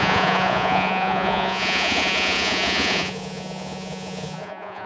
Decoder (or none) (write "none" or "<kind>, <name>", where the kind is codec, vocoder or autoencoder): vocoder, Vocos